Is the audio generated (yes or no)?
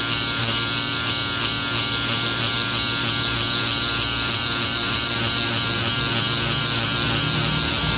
no